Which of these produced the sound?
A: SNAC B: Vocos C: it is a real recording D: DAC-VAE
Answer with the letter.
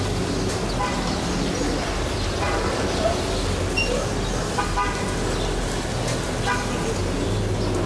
C